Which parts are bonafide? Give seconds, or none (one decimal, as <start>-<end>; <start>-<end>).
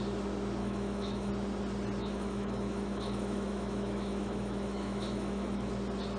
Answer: 0.0-0.6; 1.3-2.0; 5.7-6.2